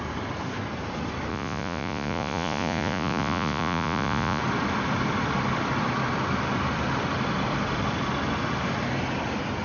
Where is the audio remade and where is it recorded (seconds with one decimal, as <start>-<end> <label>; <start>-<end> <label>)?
0.0-1.3 recorded; 1.3-4.4 remade; 4.4-9.6 recorded